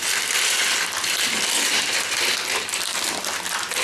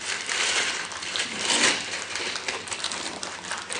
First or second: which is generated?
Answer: second